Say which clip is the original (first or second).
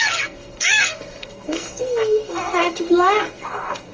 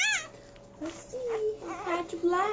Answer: second